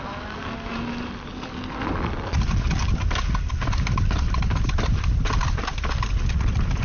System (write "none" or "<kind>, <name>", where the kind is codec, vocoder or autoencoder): none